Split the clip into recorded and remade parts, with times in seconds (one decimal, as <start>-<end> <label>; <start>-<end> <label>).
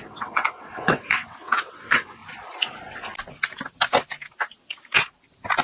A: 0.0-2.2 remade; 2.2-5.6 recorded